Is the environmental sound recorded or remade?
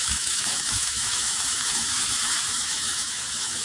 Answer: remade